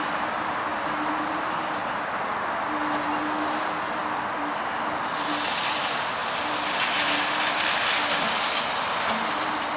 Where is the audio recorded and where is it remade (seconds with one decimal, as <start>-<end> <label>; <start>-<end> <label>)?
0.0-9.8 recorded